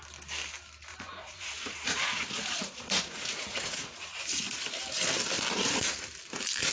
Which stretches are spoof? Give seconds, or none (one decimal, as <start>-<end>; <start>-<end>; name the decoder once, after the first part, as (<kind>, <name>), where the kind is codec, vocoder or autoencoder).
0.9-4.2 (vocoder, Vocos)